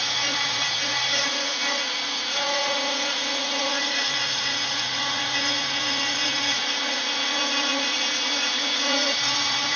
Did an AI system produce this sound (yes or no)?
yes